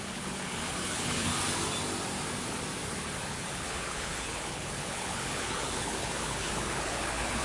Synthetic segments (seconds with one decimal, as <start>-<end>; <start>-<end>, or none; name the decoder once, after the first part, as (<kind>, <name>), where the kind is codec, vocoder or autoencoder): 0.0-1.3 (codec, HILCodec); 3.3-7.4